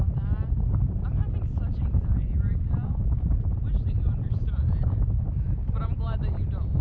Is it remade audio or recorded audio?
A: recorded